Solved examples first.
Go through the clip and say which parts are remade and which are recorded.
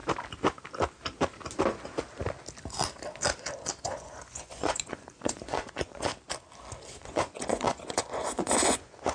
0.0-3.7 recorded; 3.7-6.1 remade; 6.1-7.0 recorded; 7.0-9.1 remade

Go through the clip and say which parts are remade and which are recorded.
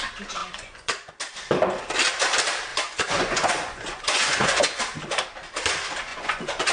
0.0-0.4 recorded; 0.4-1.1 remade; 1.1-2.7 recorded; 2.7-4.8 remade; 4.8-6.1 recorded; 6.1-6.7 remade